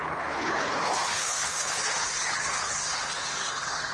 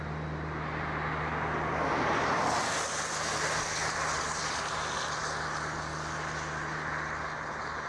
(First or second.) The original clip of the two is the second